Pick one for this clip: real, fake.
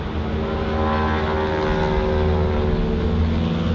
real